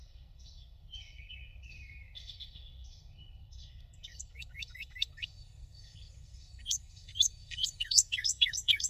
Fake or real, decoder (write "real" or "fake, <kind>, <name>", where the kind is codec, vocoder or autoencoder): fake, codec, SNAC